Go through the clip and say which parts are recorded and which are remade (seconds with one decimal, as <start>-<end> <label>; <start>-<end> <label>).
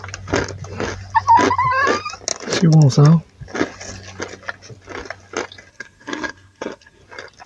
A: 0.0-5.7 recorded; 5.7-7.0 remade; 7.0-7.5 recorded